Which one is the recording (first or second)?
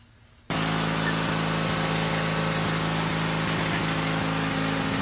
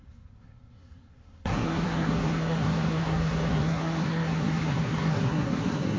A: first